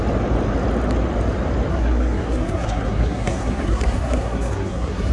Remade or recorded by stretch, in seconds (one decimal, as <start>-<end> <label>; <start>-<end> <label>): 0.0-1.7 recorded; 1.7-5.1 remade